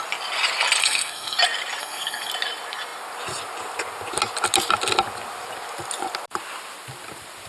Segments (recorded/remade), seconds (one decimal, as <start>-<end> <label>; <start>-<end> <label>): 0.0-0.8 recorded; 0.8-1.4 remade; 1.4-1.8 recorded; 1.8-2.3 remade; 2.3-7.5 recorded